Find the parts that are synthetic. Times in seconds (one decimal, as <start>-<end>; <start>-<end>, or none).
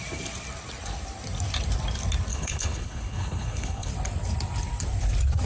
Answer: 2.3-3.9